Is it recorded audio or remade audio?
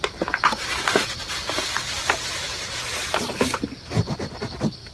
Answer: recorded